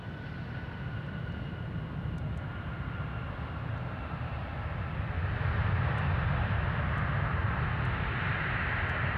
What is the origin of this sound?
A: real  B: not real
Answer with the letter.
A